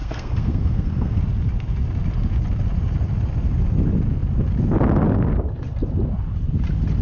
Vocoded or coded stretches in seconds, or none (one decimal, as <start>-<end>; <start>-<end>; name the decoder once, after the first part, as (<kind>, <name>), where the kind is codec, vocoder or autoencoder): 0.0-1.2 (codec, SNAC)

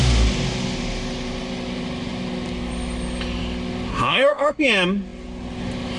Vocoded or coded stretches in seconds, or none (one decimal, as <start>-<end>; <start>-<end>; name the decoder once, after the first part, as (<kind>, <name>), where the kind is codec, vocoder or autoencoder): 3.9-4.6 (codec, SNAC)

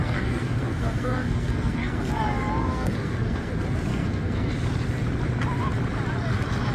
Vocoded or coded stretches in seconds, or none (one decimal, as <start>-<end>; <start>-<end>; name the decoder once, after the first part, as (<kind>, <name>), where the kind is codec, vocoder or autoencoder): 0.0-2.1 (codec, SNAC); 2.6-3.5; 3.9-4.5

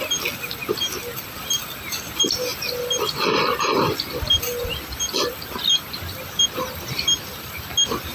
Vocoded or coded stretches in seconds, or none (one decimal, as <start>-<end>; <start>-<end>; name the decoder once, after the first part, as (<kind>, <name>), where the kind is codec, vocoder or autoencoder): none

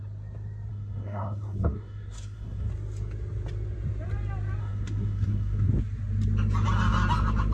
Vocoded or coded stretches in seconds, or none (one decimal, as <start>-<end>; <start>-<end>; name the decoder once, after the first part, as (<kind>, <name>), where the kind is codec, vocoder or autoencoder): 0.7-2.7 (codec, SNAC); 4.6-5.7

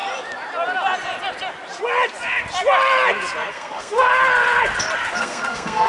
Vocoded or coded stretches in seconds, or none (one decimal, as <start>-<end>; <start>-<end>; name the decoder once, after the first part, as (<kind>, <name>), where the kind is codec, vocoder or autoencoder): 3.5-4.1 (codec, SNAC); 5.2-5.9

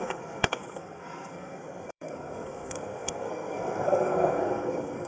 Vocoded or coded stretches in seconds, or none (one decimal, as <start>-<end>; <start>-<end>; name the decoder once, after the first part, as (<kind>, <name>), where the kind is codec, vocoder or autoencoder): 0.0-5.1 (codec, SNAC)